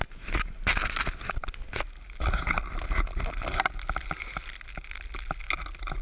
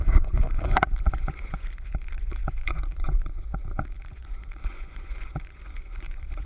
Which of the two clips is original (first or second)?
first